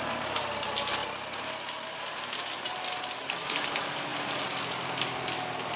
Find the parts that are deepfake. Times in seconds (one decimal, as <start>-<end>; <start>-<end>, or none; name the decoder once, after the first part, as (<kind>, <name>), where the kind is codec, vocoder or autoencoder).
none